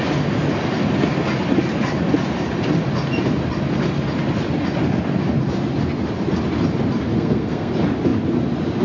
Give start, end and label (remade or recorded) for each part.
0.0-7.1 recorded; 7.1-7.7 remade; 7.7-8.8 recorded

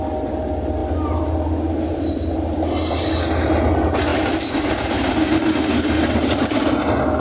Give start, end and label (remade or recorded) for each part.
0.0-4.1 recorded; 4.1-5.1 remade; 5.1-7.2 recorded

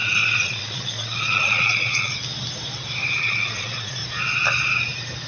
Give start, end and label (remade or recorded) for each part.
0.0-2.1 remade; 2.1-3.2 recorded; 3.2-4.0 remade; 4.0-5.3 recorded

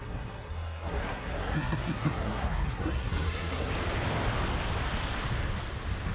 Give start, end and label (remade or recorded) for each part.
0.0-3.7 remade; 3.7-6.1 recorded

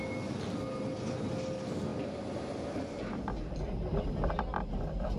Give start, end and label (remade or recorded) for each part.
0.0-5.2 recorded

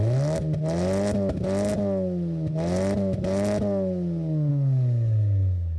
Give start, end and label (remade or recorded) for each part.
0.0-4.5 recorded; 4.5-5.8 remade

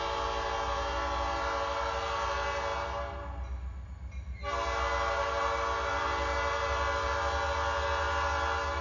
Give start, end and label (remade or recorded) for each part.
0.0-8.8 recorded